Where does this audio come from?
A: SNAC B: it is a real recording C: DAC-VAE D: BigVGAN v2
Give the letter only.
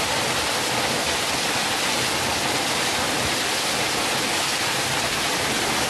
B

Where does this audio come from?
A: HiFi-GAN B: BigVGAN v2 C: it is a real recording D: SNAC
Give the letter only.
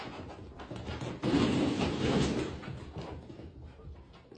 C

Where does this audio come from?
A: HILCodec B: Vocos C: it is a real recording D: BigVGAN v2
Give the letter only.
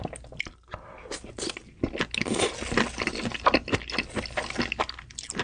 C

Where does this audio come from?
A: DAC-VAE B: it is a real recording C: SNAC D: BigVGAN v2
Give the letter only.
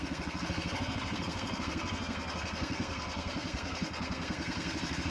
C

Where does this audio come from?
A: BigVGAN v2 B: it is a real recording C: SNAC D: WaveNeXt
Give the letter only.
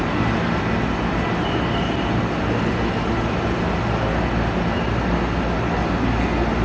B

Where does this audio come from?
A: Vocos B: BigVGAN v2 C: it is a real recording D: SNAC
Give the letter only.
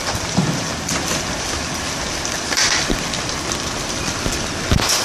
B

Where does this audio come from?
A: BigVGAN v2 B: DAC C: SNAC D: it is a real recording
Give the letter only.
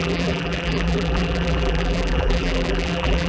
A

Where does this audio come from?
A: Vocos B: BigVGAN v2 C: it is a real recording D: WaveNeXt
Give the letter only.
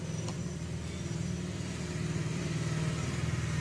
C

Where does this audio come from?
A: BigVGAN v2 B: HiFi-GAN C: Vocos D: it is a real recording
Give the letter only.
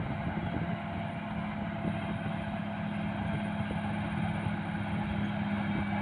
D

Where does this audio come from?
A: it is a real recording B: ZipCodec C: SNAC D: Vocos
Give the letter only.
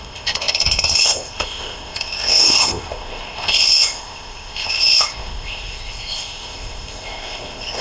B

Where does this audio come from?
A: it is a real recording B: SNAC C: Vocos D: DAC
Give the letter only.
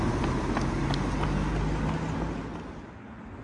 A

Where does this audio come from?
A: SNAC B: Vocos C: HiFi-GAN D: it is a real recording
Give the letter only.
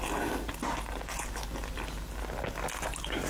D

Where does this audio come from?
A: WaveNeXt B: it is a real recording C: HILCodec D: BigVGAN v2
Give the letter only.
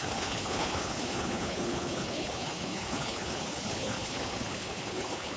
C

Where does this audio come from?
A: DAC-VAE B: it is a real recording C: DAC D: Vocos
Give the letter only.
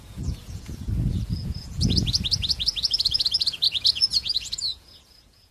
D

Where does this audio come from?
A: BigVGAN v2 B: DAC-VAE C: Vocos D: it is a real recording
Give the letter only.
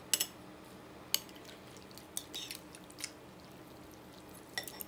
D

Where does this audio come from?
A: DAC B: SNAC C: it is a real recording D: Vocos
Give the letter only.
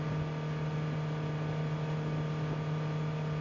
C